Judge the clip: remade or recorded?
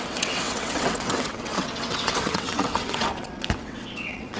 remade